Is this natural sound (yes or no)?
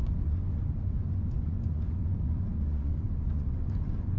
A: no